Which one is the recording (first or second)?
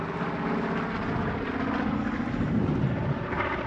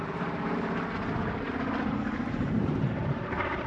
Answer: first